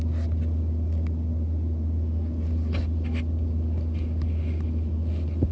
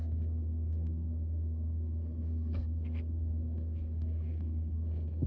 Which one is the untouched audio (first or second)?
first